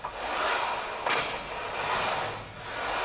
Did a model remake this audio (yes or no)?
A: no